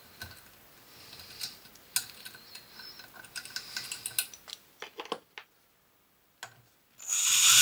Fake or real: real